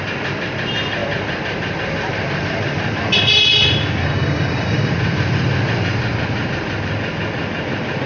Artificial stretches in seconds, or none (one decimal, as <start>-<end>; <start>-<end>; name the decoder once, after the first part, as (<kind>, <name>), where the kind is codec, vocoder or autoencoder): 4.0-4.9 (codec, DAC)